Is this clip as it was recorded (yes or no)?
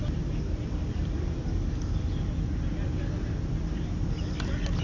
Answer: yes